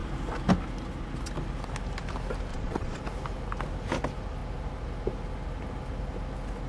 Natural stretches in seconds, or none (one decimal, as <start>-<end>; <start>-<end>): 0.0-2.5; 3.0-6.7